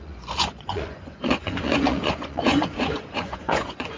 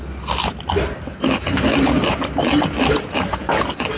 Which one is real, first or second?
second